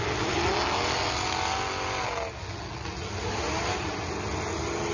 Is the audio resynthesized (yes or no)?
no